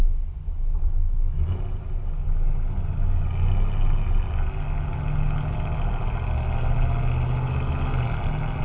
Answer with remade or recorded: recorded